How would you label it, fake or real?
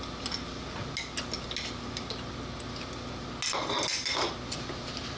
real